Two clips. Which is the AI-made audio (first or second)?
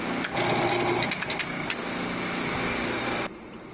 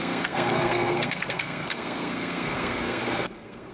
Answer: second